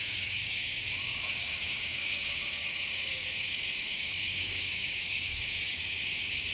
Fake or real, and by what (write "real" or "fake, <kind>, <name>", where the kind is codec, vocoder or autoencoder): fake, codec, DAC